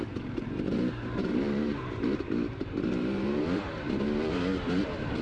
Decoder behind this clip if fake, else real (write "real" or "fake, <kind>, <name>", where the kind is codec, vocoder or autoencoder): fake, vocoder, BigVGAN v2